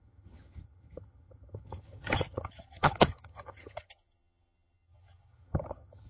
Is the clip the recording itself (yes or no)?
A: no